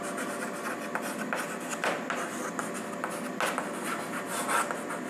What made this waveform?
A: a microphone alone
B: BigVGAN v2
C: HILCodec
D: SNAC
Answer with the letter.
A